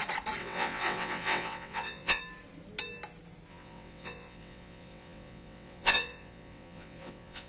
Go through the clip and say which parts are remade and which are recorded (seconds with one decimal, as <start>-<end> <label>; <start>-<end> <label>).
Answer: 0.0-0.4 recorded; 0.4-2.2 remade; 2.2-3.5 recorded; 3.5-7.5 remade

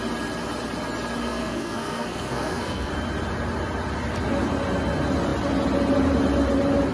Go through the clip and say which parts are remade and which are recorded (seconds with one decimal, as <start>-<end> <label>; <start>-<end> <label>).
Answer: 0.0-1.2 recorded; 1.2-2.9 remade; 2.9-6.9 recorded

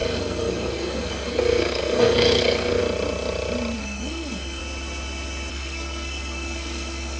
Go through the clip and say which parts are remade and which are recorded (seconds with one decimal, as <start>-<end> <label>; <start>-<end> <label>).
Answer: 0.0-2.8 remade; 2.8-3.8 recorded; 3.8-4.6 remade; 4.6-5.5 recorded; 5.5-7.2 remade

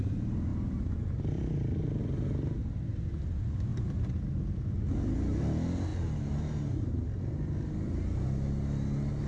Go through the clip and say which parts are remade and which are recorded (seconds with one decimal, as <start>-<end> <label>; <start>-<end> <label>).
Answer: 0.0-3.7 recorded; 3.7-4.7 remade; 4.7-9.3 recorded

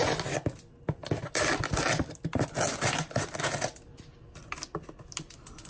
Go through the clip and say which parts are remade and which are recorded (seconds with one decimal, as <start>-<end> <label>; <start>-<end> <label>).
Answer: 0.0-5.7 recorded

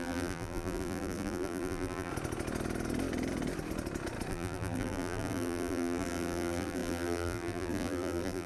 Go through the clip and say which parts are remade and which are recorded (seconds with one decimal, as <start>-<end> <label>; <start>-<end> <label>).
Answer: 0.0-2.1 remade; 2.1-4.3 recorded; 4.3-8.5 remade

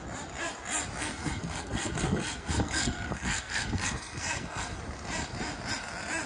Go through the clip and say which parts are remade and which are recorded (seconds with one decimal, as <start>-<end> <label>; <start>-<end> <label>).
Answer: 0.0-1.0 recorded; 1.0-4.8 remade; 4.8-6.3 recorded